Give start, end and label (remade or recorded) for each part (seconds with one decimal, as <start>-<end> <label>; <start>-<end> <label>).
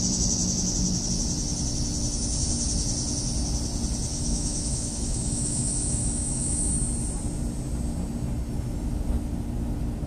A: 0.0-4.1 recorded; 4.1-6.7 remade; 6.7-10.1 recorded